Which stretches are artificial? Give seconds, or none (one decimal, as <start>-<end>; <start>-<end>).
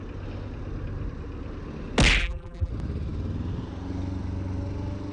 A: 2.2-2.7